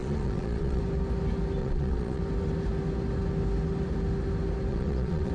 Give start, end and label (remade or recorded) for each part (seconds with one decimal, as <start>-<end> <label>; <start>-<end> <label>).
0.0-0.8 remade; 0.8-1.6 recorded; 1.6-2.2 remade; 2.2-4.7 recorded; 4.7-5.3 remade